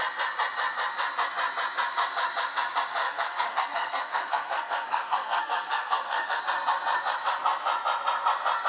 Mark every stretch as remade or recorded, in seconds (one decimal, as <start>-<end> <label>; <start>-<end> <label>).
0.0-3.0 recorded; 3.0-6.4 remade; 6.4-8.7 recorded